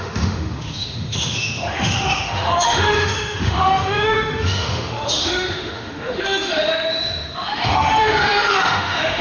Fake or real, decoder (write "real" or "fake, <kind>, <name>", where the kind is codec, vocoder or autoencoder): fake, autoencoder, DAC-VAE